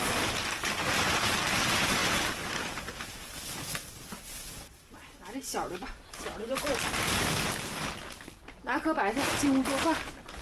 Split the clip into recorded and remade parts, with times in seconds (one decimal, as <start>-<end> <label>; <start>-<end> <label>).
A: 0.0-10.4 recorded